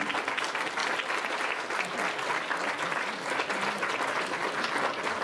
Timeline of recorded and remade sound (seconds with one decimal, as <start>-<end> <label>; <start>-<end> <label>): 0.0-0.8 recorded; 0.8-1.5 remade; 1.5-5.2 recorded